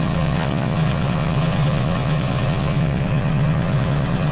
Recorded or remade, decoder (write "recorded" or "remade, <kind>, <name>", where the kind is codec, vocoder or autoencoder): remade, vocoder, Vocos